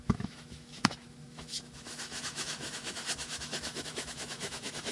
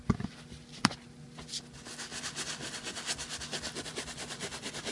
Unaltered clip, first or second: second